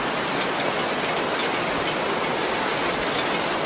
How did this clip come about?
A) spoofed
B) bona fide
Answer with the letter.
B